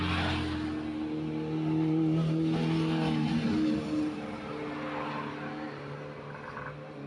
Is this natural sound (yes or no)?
yes